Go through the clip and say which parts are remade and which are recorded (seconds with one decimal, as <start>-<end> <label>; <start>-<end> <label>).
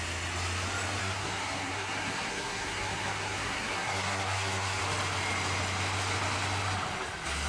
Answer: 0.0-1.0 recorded; 1.0-4.8 remade; 4.8-7.5 recorded